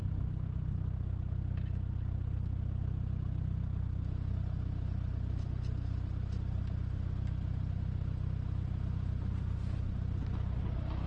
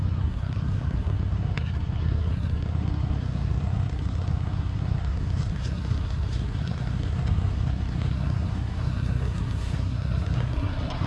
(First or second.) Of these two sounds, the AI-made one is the second